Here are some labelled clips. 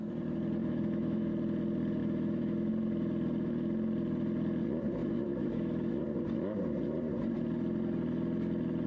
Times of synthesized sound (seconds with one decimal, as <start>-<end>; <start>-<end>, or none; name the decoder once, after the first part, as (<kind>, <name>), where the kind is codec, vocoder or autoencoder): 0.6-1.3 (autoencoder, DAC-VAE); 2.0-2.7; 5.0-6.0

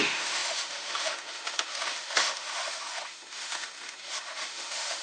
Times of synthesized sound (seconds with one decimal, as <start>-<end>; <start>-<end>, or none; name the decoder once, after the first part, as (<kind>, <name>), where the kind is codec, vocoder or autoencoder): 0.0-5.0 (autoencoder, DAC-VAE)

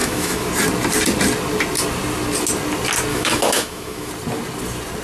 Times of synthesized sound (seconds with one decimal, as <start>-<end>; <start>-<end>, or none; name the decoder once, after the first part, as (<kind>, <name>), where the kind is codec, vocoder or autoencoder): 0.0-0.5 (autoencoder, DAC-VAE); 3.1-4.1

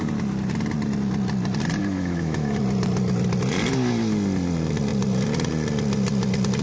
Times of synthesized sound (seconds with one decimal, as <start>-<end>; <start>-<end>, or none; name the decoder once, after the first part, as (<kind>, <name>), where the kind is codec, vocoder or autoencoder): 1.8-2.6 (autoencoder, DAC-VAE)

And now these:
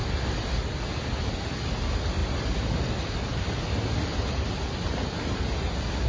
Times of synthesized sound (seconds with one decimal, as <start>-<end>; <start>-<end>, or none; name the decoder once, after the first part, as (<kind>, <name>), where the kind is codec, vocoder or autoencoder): none